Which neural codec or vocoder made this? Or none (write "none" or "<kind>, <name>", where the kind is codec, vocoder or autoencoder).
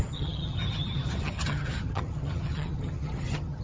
vocoder, HiFi-GAN